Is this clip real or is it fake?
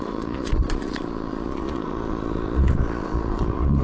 fake